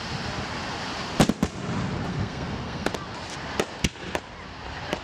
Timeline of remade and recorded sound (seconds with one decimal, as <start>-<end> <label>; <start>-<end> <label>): 0.0-2.1 recorded; 2.1-2.9 remade; 2.9-5.0 recorded